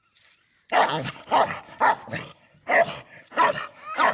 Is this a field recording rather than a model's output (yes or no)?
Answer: yes